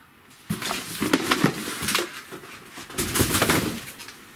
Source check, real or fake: real